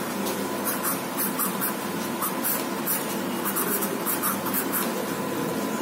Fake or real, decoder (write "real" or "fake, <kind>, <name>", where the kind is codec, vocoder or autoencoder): real